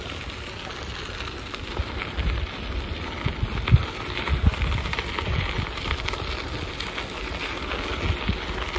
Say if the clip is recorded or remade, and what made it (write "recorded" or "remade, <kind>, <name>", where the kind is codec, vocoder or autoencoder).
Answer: recorded